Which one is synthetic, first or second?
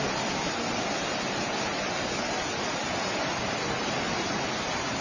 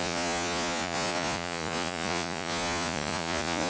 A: second